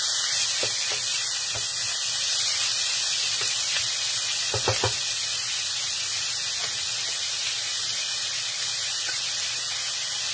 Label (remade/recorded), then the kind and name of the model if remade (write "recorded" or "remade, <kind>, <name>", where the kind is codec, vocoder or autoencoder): recorded